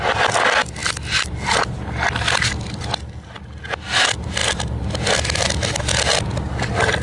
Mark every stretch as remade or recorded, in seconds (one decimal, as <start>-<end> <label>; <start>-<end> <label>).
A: 0.0-0.8 recorded; 0.8-3.8 remade; 3.8-7.0 recorded